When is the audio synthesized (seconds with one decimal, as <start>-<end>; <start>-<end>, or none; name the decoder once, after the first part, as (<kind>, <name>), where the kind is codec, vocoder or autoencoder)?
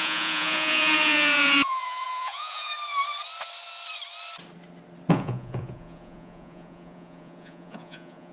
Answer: 0.0-2.7 (vocoder, Vocos); 5.1-8.3